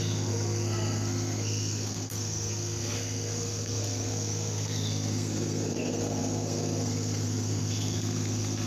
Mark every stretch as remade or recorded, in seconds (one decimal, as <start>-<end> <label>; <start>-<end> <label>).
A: 0.0-8.7 remade